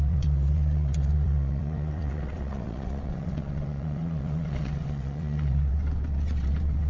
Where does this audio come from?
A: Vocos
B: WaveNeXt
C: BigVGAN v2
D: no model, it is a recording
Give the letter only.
B